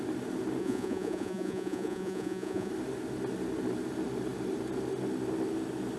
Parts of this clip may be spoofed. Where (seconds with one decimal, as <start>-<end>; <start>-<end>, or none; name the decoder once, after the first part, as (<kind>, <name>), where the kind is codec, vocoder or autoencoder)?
0.6-2.7 (vocoder, Vocos)